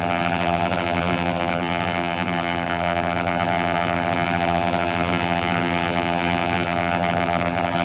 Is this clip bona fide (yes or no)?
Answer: no